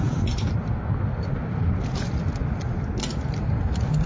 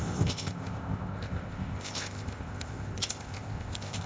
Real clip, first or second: first